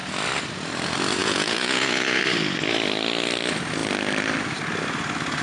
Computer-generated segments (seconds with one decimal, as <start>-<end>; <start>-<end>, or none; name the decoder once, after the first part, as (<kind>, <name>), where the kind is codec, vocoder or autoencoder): 1.2-2.2 (vocoder, Vocos)